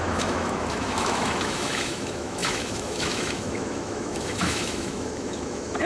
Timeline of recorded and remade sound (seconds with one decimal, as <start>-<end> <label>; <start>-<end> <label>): 0.0-5.9 remade